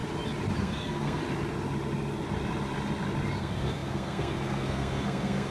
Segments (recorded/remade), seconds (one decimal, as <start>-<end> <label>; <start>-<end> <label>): 0.0-0.6 recorded; 0.6-1.2 remade; 1.2-3.4 recorded; 3.4-5.5 remade